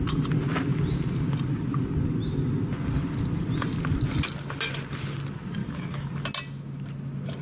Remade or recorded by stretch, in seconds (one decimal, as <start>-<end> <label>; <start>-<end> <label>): 0.0-5.6 recorded; 5.6-6.2 remade; 6.2-7.4 recorded